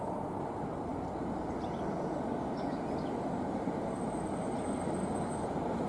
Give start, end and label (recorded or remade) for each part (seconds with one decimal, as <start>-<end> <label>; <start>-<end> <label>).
0.0-5.9 recorded